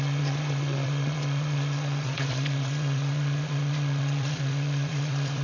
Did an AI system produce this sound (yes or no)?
yes